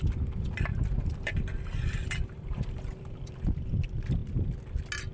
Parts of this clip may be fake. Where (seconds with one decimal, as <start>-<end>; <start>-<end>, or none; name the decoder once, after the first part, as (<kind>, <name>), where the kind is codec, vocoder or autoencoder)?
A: 0.7-3.8 (vocoder, BigVGAN v2)